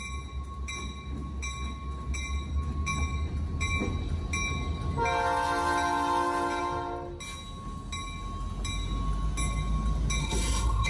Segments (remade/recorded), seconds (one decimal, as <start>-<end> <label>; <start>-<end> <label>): 0.0-10.2 recorded; 10.2-10.9 remade